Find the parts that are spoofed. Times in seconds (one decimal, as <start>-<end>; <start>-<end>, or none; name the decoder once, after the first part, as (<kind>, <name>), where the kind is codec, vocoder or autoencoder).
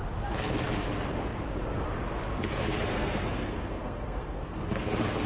2.9-4.7 (codec, SNAC)